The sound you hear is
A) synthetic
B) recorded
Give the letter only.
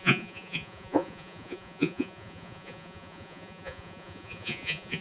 A